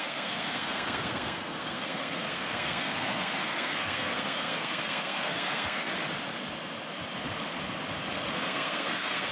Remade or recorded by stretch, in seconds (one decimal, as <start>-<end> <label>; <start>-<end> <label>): 0.0-5.9 remade; 5.9-8.3 recorded; 8.3-9.3 remade

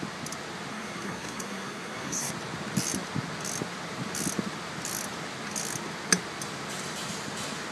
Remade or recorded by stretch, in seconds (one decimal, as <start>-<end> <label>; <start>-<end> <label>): 0.0-0.7 recorded; 0.7-2.3 remade; 2.3-7.7 recorded

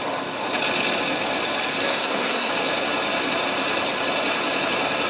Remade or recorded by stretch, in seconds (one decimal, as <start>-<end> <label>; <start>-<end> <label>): 0.0-1.8 recorded; 1.8-2.5 remade; 2.5-5.1 recorded

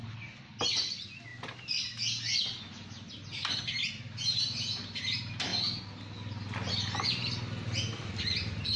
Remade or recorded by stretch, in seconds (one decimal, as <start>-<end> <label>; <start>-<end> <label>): 0.0-8.8 recorded

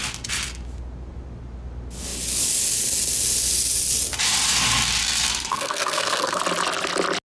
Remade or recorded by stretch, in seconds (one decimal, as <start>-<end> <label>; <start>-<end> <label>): 0.0-5.3 recorded; 5.3-6.4 remade; 6.4-7.3 recorded

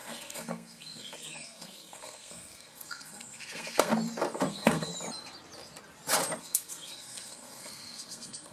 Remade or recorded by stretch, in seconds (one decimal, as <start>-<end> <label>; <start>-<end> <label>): 0.0-3.9 remade; 3.9-4.5 recorded; 4.5-4.9 remade; 4.9-6.4 recorded; 6.4-8.5 remade